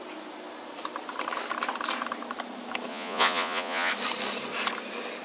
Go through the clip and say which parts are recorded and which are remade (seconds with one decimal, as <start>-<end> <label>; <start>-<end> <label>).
0.0-2.9 recorded; 2.9-3.9 remade; 3.9-5.2 recorded